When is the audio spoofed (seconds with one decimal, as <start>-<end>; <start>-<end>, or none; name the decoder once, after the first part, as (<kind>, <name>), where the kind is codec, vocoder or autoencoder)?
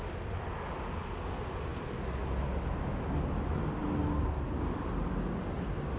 none